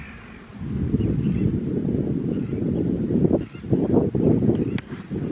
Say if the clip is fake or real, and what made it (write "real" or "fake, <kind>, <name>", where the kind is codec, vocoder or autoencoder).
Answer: real